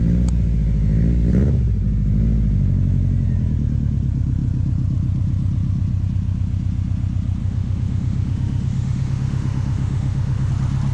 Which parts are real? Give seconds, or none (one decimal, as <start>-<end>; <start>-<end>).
0.0-7.4; 10.5-10.9